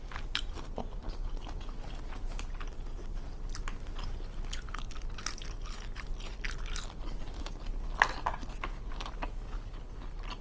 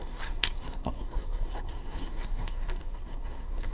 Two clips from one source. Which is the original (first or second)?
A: first